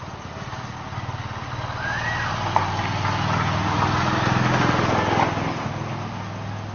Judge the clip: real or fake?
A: real